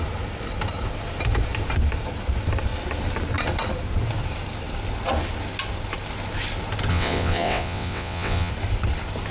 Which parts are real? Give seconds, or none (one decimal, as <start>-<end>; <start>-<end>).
0.0-6.9; 8.5-9.3